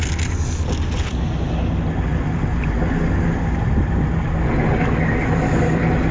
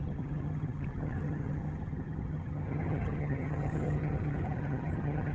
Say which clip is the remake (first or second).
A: second